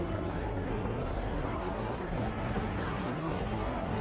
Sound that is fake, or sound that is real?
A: fake